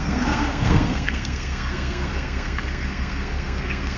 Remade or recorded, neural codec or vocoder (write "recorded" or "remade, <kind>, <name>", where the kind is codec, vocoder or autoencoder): remade, codec, SNAC